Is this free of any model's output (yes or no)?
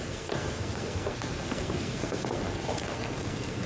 no